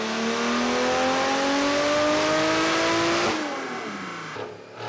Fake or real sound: real